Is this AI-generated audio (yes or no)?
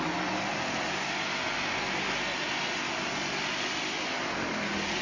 no